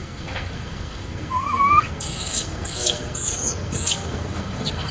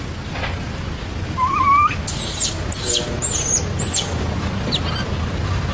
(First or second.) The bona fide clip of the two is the second